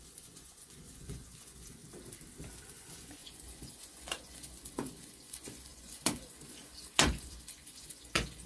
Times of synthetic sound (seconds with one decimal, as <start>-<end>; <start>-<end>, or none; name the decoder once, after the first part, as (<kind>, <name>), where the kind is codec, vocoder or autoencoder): 0.0-1.8 (vocoder, Vocos); 2.6-8.5